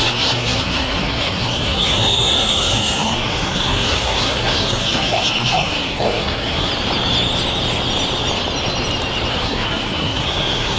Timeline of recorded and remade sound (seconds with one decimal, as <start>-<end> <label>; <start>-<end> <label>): 0.0-6.7 remade; 6.7-9.3 recorded; 9.3-10.8 remade